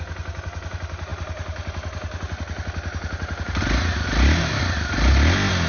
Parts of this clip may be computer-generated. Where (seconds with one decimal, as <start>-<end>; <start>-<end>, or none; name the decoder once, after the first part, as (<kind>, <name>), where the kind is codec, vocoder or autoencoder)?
none